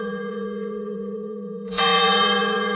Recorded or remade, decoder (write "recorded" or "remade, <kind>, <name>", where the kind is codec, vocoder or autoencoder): remade, vocoder, Vocos